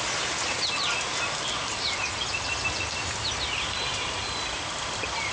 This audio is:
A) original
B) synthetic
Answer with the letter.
A